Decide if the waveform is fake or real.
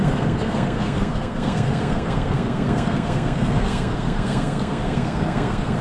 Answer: fake